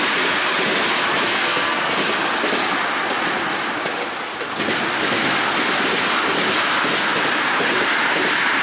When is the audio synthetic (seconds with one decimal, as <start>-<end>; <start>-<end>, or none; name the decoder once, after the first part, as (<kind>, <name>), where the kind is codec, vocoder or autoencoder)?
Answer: 1.3-1.9 (codec, SNAC)